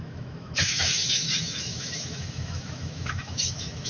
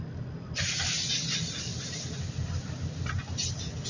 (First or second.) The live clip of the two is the second